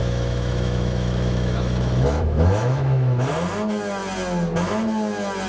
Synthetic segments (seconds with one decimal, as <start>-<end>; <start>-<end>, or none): 0.0-3.3